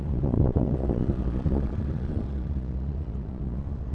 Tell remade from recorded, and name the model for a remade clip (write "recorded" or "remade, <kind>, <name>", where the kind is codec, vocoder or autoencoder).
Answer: remade, vocoder, Vocos